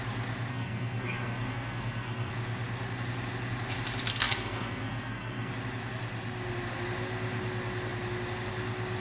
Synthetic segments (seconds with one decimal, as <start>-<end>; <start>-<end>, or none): 0.5-2.3; 4.1-5.5